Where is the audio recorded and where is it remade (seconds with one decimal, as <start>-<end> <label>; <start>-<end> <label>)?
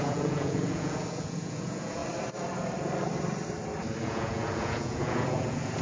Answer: 0.0-2.0 remade; 2.0-4.0 recorded; 4.0-5.8 remade